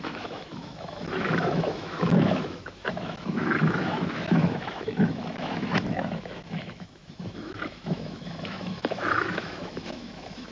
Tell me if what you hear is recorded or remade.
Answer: remade